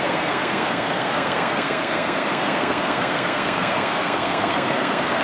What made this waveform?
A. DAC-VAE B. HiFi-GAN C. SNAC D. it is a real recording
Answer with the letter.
C